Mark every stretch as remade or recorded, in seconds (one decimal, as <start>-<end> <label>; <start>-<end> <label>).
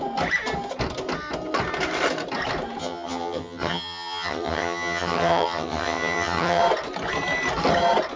0.0-2.8 recorded; 2.8-6.6 remade; 6.6-8.2 recorded